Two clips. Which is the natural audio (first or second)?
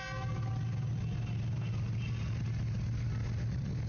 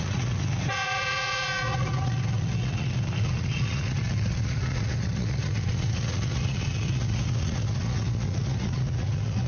first